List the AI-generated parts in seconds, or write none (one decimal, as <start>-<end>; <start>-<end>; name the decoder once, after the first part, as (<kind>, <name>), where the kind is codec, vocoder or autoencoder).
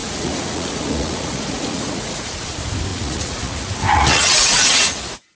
0.0-2.5 (vocoder, Vocos); 2.9-5.3